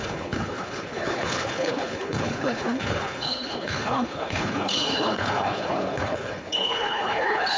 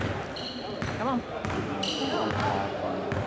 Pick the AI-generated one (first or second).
first